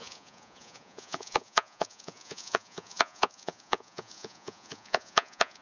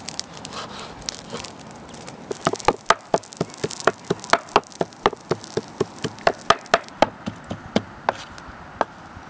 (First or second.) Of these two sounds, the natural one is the second